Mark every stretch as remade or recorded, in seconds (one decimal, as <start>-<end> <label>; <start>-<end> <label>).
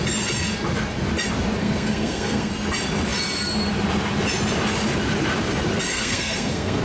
0.0-1.6 recorded; 1.6-2.5 remade; 2.5-5.9 recorded; 5.9-6.8 remade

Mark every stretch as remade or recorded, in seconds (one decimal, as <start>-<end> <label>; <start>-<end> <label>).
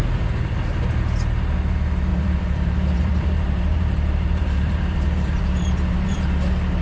0.0-2.1 recorded; 2.1-6.2 remade; 6.2-6.8 recorded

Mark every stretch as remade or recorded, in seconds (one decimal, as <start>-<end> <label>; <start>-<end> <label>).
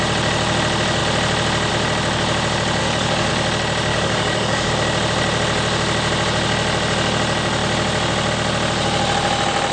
0.0-2.8 recorded; 2.8-3.3 remade; 3.3-3.9 recorded; 3.9-4.7 remade; 4.7-9.7 recorded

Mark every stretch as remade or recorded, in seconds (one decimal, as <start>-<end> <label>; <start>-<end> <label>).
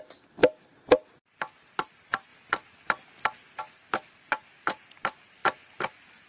0.0-6.3 recorded